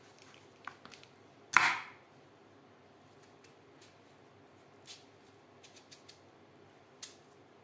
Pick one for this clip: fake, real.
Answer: real